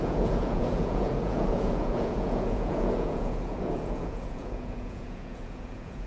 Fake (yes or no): yes